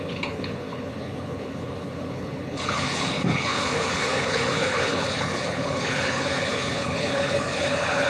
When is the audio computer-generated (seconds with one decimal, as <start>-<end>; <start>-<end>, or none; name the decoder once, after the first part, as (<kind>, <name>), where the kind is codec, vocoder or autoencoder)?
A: 0.0-8.1 (codec, HILCodec)